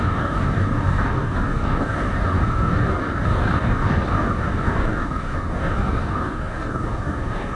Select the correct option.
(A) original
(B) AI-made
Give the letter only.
B